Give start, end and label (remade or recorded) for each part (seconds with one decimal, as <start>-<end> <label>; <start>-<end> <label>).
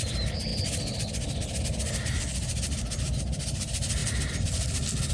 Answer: 0.0-5.1 recorded